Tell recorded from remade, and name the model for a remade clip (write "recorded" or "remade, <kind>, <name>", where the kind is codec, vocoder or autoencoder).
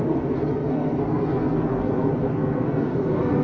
remade, codec, SNAC